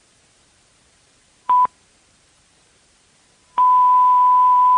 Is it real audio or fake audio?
fake